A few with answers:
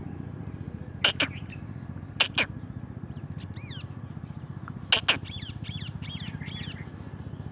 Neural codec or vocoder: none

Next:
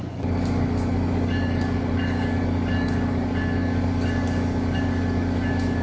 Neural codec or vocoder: codec, DAC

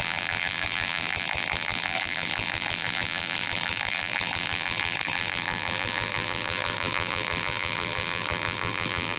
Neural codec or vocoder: vocoder, BigVGAN v2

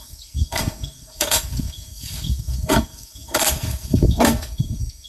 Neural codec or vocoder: codec, SNAC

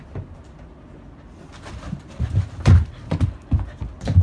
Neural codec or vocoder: none